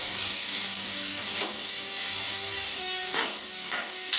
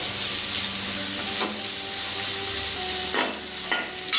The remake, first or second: first